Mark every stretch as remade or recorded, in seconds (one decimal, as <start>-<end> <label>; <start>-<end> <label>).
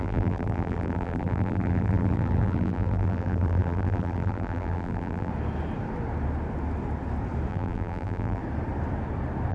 0.0-5.3 remade; 5.3-7.5 recorded; 7.5-8.4 remade; 8.4-9.5 recorded